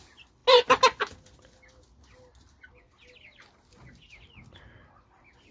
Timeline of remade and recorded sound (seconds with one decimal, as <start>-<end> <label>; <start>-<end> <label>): 0.0-5.5 recorded